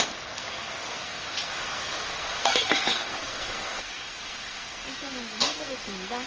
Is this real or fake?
fake